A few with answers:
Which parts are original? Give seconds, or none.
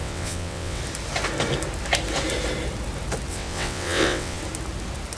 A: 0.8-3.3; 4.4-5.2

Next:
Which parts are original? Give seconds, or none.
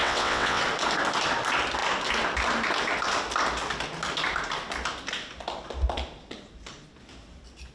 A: 0.6-7.7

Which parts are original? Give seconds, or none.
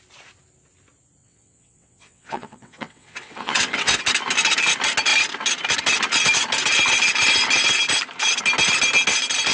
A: 0.0-1.2; 4.0-9.5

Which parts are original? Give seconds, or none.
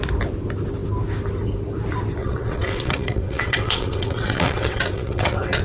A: 0.0-2.2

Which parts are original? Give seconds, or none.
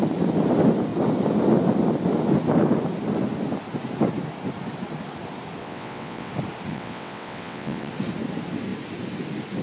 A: 0.0-5.6; 6.3-6.7; 7.9-9.6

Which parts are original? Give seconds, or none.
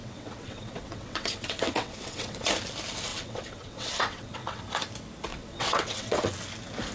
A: 2.5-3.1; 4.6-5.3; 6.3-6.9